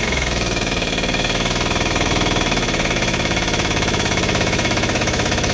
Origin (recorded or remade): remade